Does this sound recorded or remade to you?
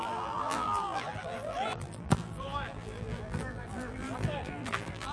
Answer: remade